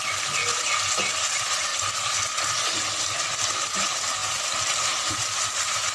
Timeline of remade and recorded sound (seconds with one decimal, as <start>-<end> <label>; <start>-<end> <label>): 0.0-5.9 recorded